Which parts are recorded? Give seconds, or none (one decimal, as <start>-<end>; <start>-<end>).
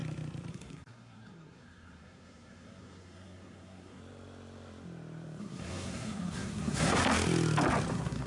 0.0-0.5; 4.0-5.4; 7.0-7.9